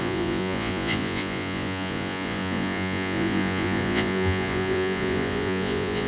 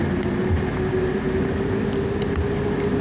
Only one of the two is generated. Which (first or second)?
first